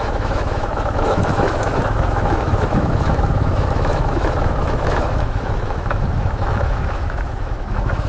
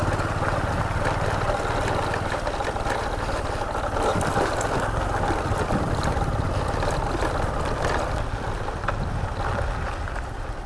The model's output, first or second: first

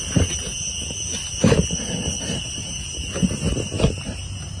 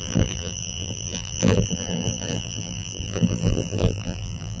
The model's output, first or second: second